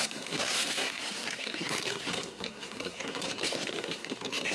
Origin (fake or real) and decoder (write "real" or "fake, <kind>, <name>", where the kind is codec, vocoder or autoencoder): fake, codec, SNAC